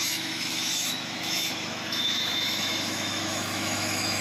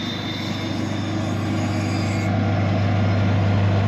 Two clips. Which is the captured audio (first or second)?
second